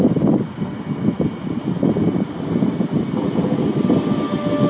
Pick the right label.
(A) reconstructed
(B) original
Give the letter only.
B